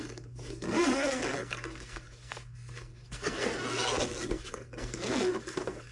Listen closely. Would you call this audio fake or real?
fake